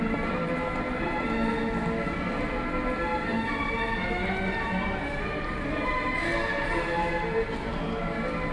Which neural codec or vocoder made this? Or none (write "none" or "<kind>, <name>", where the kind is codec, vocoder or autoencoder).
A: none